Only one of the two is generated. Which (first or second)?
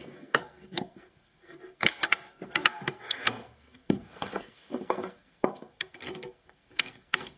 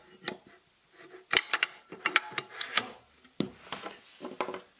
first